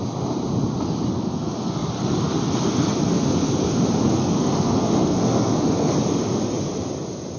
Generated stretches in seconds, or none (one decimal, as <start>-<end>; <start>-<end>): 1.1-1.9; 3.1-3.7; 4.2-5.9